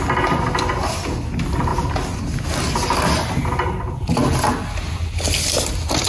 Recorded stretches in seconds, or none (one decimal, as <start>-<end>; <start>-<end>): 0.0-6.1